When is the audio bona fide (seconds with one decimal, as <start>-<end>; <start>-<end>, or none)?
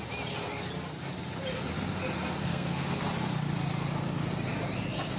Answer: 0.0-2.4; 3.0-5.2